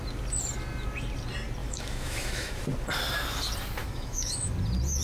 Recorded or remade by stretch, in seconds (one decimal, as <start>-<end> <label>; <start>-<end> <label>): 0.0-1.6 recorded; 1.6-2.6 remade; 2.6-3.8 recorded; 3.8-4.5 remade; 4.5-5.0 recorded